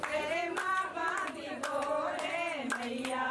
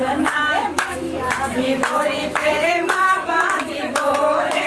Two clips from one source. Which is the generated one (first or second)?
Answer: second